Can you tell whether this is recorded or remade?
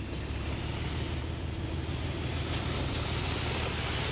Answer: recorded